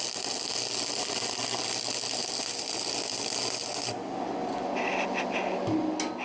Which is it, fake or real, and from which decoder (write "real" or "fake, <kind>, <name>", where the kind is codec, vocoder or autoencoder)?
real